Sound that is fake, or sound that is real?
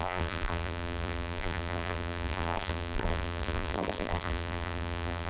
fake